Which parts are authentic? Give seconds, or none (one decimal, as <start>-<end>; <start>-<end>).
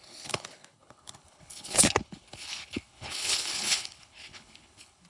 none